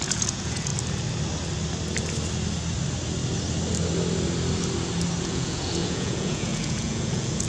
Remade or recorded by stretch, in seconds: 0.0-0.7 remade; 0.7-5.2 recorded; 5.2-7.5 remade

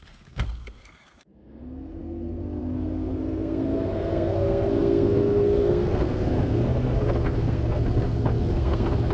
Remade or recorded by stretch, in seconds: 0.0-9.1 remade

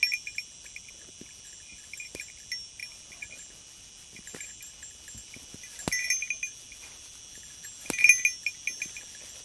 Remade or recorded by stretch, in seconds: 0.0-9.4 recorded

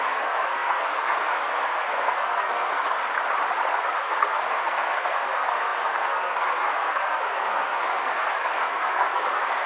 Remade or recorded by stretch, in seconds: 0.0-3.0 remade; 3.0-3.7 recorded; 3.7-9.7 remade

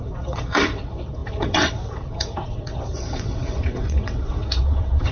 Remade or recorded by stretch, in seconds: 0.0-5.1 remade

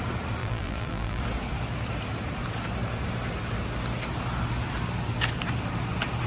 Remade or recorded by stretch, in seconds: 0.0-0.4 recorded; 0.4-1.2 remade; 1.2-6.3 recorded

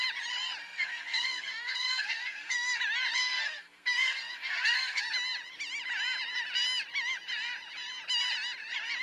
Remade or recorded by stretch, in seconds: 0.0-0.6 recorded; 0.6-2.8 remade; 2.8-3.2 recorded; 3.2-5.0 remade; 5.0-9.0 recorded

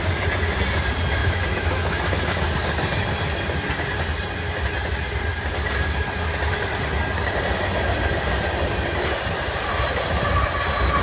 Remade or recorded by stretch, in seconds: 0.0-1.2 recorded; 1.2-2.2 remade; 2.2-11.0 recorded